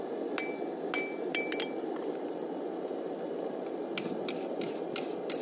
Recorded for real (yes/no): yes